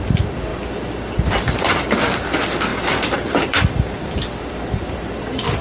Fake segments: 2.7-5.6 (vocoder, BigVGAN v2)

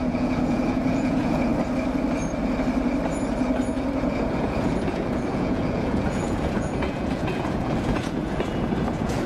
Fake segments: 0.0-1.5 (vocoder, Vocos); 3.7-9.3

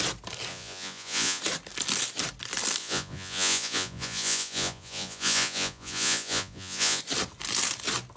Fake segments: 0.5-1.4 (vocoder, Vocos); 2.8-7.0

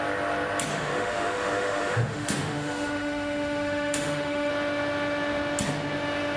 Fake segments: 0.7-4.5 (autoencoder, DAC-VAE)